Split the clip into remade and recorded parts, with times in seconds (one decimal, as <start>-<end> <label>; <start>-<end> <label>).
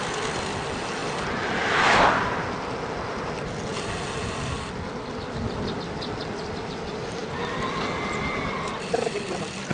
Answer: 0.0-9.7 recorded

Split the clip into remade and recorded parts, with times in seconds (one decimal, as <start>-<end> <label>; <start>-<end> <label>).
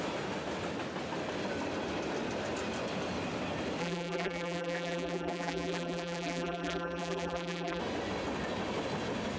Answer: 0.0-3.8 recorded; 3.8-7.8 remade; 7.8-9.4 recorded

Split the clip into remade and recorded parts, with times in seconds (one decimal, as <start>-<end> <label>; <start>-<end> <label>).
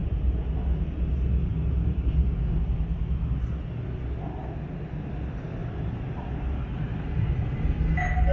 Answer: 0.0-5.6 recorded; 5.6-7.3 remade; 7.3-8.3 recorded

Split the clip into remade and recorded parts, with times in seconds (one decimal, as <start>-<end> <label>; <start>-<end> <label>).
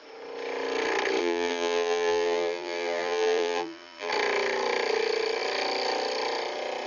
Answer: 0.0-1.2 recorded; 1.2-4.1 remade; 4.1-6.9 recorded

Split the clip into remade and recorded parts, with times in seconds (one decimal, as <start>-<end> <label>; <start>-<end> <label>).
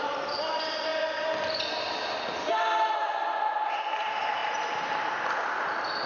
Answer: 0.0-4.4 recorded; 4.4-6.1 remade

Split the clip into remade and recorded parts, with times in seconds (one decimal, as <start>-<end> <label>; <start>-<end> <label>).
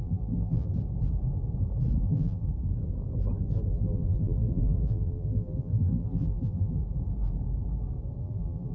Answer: 0.0-0.7 remade; 0.7-2.0 recorded; 2.0-2.5 remade; 2.5-3.7 recorded; 3.7-6.8 remade; 6.8-8.2 recorded; 8.2-8.7 remade